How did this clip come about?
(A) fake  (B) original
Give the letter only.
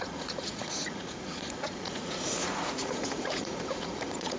A